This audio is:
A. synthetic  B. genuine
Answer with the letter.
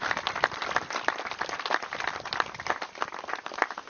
A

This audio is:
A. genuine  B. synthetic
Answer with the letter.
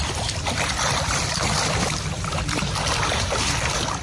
B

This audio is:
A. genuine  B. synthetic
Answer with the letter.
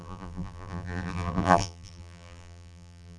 B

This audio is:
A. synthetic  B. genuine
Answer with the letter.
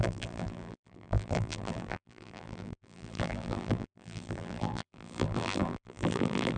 A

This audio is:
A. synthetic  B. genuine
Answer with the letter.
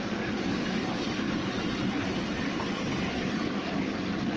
B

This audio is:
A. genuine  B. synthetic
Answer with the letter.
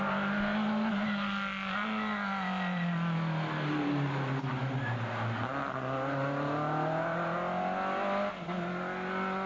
A